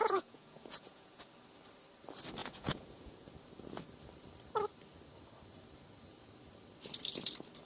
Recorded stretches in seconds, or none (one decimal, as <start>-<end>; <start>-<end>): 1.2-2.4; 3.3-7.7